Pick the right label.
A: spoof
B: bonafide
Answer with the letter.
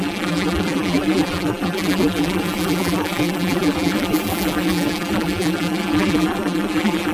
A